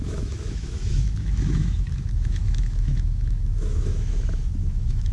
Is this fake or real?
fake